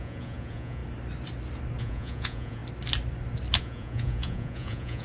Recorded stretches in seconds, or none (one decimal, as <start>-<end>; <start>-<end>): 0.8-1.8; 2.6-3.6